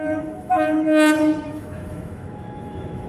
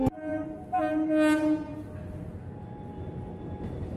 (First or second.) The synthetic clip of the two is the first